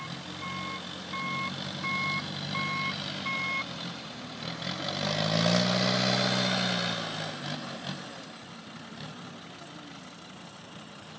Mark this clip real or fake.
real